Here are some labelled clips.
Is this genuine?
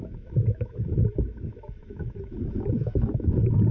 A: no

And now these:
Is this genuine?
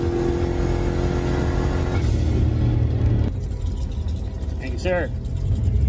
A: yes